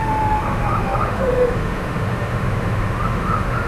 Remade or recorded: remade